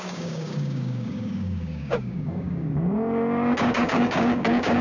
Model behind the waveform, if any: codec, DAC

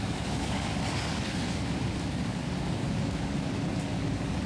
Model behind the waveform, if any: codec, DAC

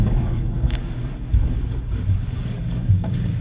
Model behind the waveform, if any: codec, DAC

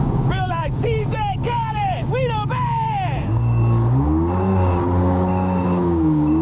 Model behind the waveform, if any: codec, DAC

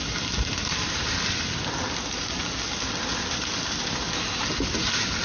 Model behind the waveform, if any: none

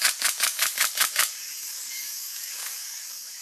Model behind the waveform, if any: codec, DAC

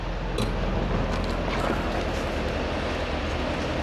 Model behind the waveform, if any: none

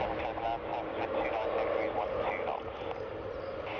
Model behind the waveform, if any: none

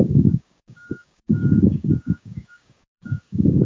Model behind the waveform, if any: codec, DAC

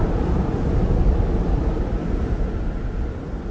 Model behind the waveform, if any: none